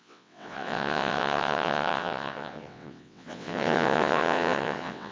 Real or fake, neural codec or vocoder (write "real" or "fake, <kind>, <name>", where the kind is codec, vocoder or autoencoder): fake, vocoder, WaveNeXt